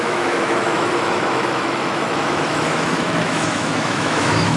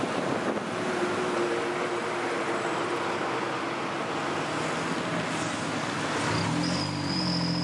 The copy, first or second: first